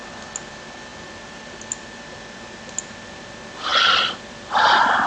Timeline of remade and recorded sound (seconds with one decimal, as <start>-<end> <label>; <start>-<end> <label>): 0.0-5.1 recorded

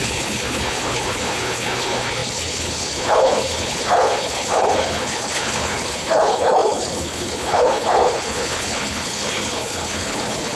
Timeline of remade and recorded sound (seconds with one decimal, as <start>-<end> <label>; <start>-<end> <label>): 0.0-10.5 remade

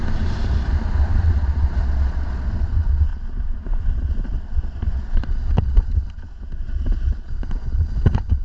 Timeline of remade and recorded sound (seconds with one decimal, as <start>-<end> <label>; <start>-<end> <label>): 0.0-1.2 recorded; 1.2-3.1 remade; 3.1-3.8 recorded; 3.8-6.0 remade; 6.0-6.6 recorded; 6.6-8.4 remade

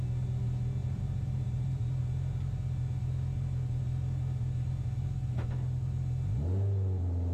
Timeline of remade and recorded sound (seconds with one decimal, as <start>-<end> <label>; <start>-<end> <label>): 0.0-0.8 recorded; 0.8-2.0 remade; 2.0-7.3 recorded

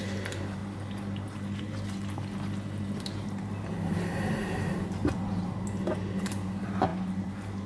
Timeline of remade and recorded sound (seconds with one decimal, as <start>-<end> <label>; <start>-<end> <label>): 0.0-0.6 remade; 0.6-1.6 recorded; 1.6-2.0 remade; 2.0-3.0 recorded; 3.0-5.0 remade; 5.0-6.2 recorded; 6.2-7.7 remade

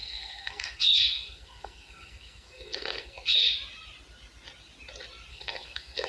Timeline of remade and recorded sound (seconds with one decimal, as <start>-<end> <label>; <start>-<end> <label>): 0.0-3.4 remade; 3.4-5.3 recorded; 5.3-6.1 remade